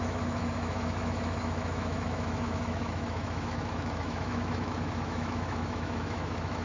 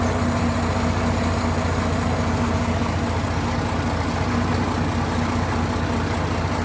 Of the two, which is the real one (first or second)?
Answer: second